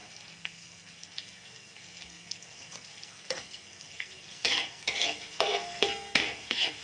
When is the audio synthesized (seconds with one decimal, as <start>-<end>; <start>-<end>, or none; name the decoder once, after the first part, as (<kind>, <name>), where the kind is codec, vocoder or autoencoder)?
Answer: 0.0-6.8 (codec, SNAC)

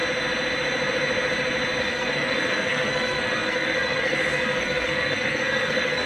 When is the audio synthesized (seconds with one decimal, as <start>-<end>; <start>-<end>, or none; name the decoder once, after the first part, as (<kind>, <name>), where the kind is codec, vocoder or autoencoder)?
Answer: 1.8-6.1 (codec, SNAC)

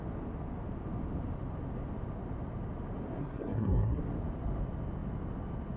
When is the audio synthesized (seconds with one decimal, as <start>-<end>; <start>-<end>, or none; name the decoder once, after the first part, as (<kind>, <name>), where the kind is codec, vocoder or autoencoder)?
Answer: 3.2-4.0 (codec, SNAC)

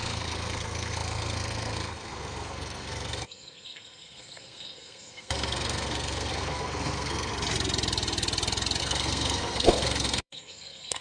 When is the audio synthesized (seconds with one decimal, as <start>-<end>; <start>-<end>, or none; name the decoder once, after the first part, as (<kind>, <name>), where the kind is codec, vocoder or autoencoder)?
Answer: 0.0-7.3 (codec, SNAC); 8.8-11.0

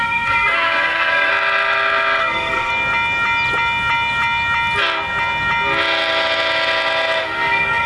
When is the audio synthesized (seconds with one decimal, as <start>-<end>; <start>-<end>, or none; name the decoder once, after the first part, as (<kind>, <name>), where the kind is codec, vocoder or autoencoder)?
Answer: 0.0-1.3 (codec, SNAC); 2.2-2.7; 7.2-7.9

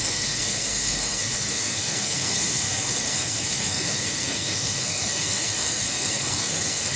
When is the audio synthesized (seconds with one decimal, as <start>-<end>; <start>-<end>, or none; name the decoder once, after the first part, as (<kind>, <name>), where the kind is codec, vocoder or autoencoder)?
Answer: 0.0-7.0 (codec, SNAC)